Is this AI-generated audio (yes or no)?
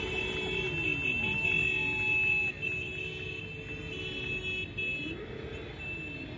no